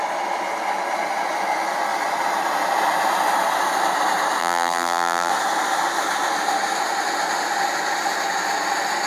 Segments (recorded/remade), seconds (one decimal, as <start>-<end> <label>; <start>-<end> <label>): 0.0-4.4 recorded; 4.4-5.3 remade; 5.3-9.1 recorded